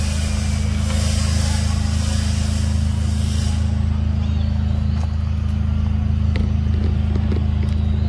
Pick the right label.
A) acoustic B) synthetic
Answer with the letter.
A